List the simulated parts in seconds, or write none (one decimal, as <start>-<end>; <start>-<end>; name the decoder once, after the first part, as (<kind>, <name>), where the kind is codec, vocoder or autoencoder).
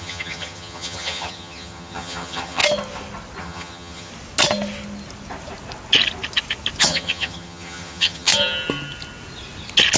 0.0-2.6 (vocoder, HiFi-GAN); 3.4-4.1; 6.8-8.3